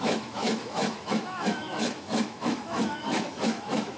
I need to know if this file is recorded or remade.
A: remade